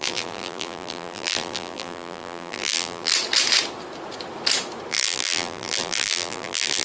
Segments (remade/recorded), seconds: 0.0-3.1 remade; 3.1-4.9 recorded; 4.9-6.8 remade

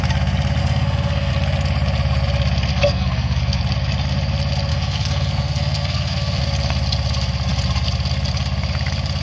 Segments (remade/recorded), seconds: 0.0-0.6 recorded; 0.6-1.3 remade; 1.3-2.7 recorded; 2.7-3.6 remade; 3.6-4.7 recorded; 4.7-6.4 remade; 6.4-9.2 recorded

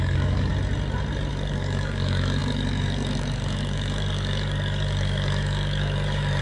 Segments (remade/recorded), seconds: 0.0-0.5 remade; 0.5-1.3 recorded; 1.3-6.4 remade

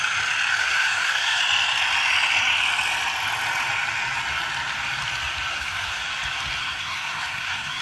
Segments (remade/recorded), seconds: 0.0-0.6 recorded; 0.6-1.4 remade; 1.4-5.5 recorded; 5.5-6.1 remade; 6.1-6.6 recorded; 6.6-7.8 remade

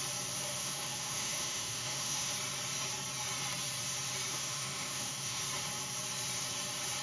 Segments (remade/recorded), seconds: 0.0-0.6 recorded; 0.6-2.3 remade; 2.3-4.3 recorded; 4.3-5.4 remade; 5.4-7.0 recorded